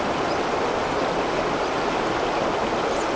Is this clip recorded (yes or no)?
yes